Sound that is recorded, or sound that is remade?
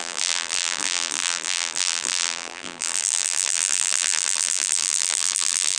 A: remade